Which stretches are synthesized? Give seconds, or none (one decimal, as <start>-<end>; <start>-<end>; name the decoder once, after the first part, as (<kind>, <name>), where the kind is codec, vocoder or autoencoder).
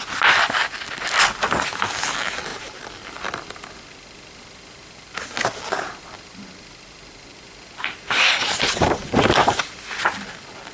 2.5-3.0 (vocoder, BigVGAN v2); 8.4-10.0